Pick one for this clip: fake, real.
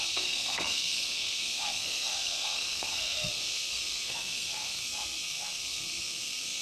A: fake